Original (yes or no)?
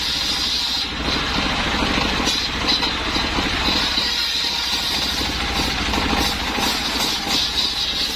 yes